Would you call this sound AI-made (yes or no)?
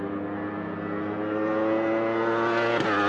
no